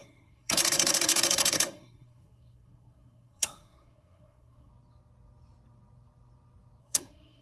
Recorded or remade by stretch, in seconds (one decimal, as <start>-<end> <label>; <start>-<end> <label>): 0.0-4.7 remade; 4.7-6.8 recorded; 6.8-7.4 remade